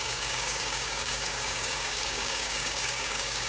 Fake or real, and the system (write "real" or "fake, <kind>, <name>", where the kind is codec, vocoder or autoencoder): fake, codec, DAC